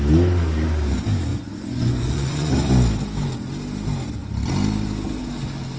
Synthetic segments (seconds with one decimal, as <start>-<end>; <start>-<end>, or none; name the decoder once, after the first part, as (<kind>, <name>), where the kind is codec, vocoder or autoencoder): 1.3-2.5 (vocoder, Vocos)